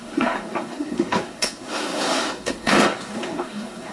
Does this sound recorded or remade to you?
remade